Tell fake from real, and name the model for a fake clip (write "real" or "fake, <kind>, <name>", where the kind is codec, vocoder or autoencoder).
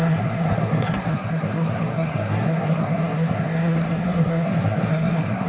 fake, codec, SNAC